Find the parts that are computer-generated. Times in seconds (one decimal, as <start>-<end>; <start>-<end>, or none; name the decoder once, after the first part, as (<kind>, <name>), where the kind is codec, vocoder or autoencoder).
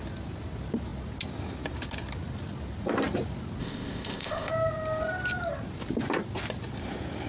3.6-4.5 (codec, ZipCodec)